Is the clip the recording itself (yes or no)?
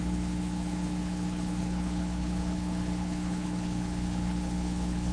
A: no